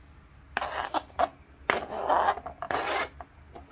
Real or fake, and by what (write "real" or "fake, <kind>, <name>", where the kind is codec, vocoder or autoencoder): real